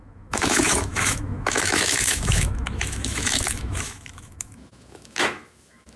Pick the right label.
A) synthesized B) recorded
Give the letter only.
A